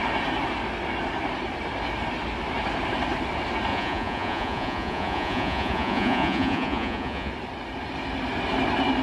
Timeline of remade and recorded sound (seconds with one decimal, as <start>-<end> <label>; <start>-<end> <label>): 0.0-3.7 recorded; 3.7-7.3 remade; 7.3-9.0 recorded

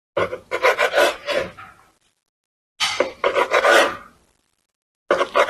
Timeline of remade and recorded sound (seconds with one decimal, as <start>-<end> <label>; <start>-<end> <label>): 0.0-5.5 recorded

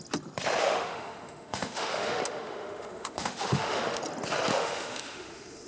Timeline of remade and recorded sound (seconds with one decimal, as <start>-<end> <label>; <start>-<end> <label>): 0.0-0.6 recorded; 0.6-4.0 remade; 4.0-4.5 recorded; 4.5-5.7 remade

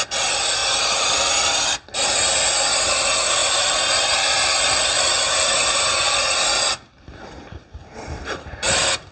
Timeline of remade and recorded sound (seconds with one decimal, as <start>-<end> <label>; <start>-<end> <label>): 0.0-9.1 recorded

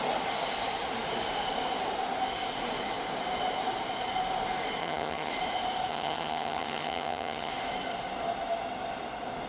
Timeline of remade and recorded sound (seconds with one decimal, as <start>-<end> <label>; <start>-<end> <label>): 0.0-4.8 recorded; 4.8-5.3 remade; 5.3-5.9 recorded; 5.9-7.5 remade; 7.5-9.5 recorded

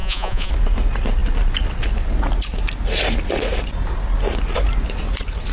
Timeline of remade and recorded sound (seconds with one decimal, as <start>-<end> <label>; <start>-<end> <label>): 0.0-0.5 remade; 0.5-5.5 recorded

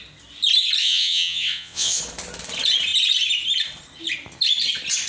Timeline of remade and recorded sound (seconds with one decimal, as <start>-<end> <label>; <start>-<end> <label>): 0.0-0.8 recorded; 0.8-2.0 remade; 2.0-5.1 recorded